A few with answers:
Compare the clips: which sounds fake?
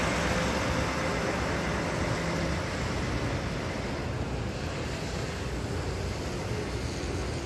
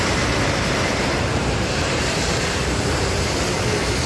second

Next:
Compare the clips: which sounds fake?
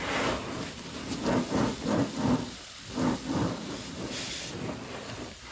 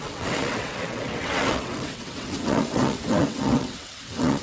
second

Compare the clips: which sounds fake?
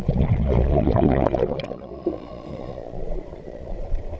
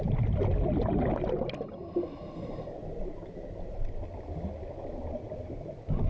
first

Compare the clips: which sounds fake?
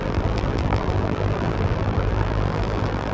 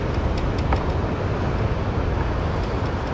first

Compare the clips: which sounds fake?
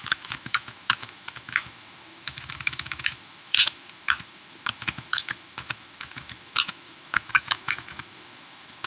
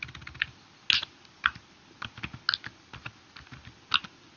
first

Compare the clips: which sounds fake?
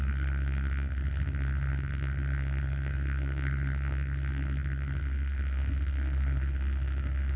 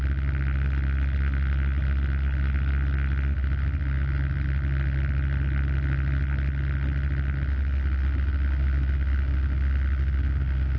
first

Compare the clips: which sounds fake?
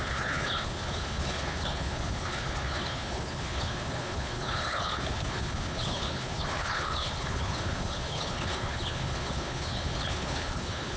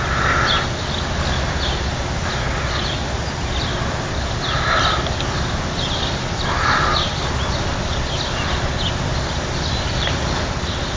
first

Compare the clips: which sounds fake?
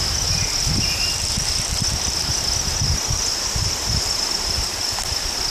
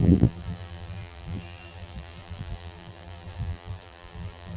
second